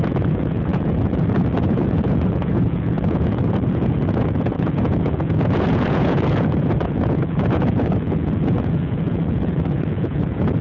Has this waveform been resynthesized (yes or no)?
yes